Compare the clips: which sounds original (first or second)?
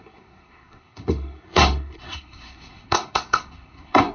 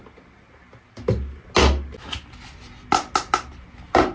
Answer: second